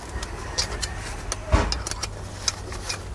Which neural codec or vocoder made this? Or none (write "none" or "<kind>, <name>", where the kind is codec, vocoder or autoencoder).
none